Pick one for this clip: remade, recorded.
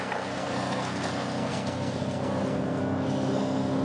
remade